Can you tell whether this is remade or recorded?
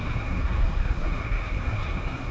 remade